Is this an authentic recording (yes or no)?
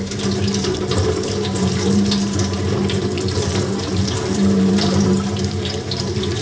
no